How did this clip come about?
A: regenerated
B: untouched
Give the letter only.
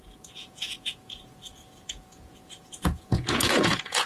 A